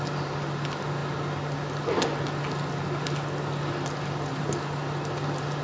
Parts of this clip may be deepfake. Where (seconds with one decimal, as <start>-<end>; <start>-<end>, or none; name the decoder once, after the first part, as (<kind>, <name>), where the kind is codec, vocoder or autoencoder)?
none